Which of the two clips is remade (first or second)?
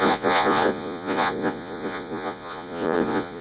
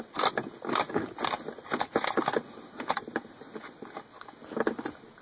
first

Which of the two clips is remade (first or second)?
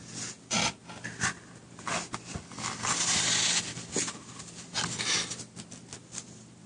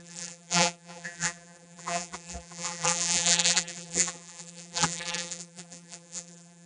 second